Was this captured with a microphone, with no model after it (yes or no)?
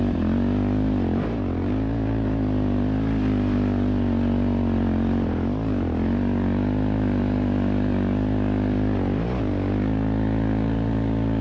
yes